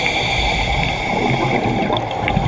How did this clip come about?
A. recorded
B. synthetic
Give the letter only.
A